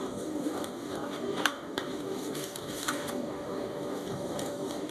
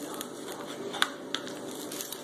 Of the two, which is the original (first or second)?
second